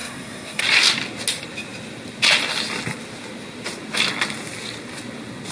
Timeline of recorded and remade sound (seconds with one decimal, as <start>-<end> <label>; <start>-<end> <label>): 0.0-0.6 remade; 0.6-5.5 recorded